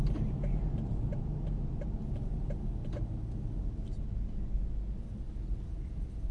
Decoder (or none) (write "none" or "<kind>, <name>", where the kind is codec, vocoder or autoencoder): none